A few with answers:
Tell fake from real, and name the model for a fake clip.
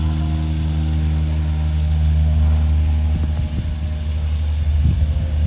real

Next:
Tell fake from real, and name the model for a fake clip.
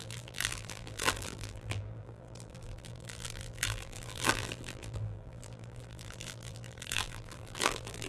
fake, vocoder, BigVGAN v2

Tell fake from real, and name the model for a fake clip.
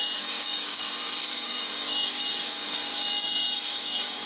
fake, codec, DAC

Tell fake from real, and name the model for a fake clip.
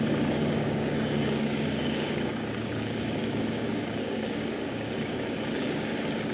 fake, codec, DAC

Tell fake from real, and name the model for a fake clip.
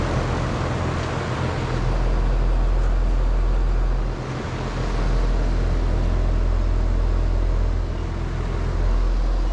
real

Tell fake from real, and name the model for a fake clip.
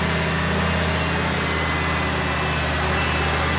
real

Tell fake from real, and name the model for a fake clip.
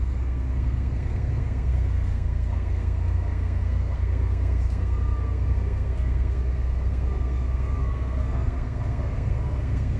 fake, codec, SNAC